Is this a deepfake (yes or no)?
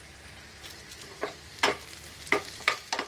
no